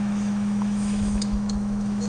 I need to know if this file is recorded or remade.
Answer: remade